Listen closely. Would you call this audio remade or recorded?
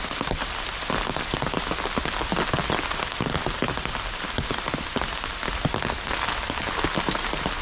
recorded